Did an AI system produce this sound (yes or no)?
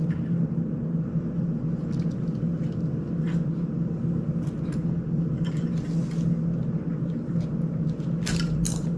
no